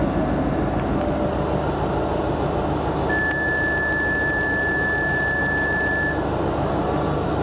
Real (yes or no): yes